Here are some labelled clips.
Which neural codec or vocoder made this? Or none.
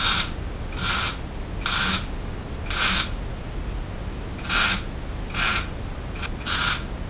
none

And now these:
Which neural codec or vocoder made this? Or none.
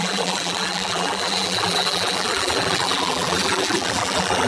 vocoder, BigVGAN v2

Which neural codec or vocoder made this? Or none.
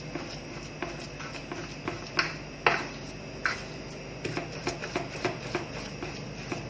none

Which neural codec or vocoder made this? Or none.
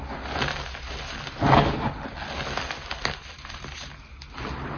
none